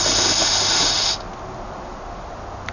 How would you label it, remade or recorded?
recorded